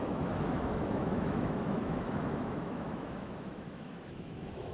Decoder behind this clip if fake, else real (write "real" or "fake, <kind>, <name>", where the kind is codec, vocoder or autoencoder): fake, autoencoder, DAC-VAE